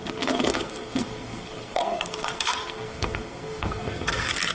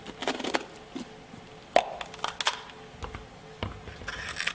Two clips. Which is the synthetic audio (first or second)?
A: first